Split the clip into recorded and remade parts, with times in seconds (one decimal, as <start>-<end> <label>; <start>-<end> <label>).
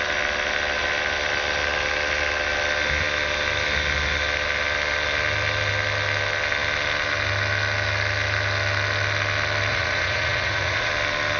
0.0-9.7 recorded; 9.7-10.9 remade; 10.9-11.4 recorded